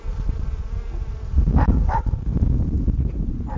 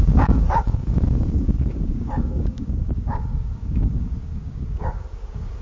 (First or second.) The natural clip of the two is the first